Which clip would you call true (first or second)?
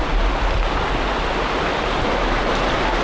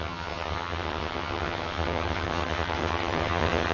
first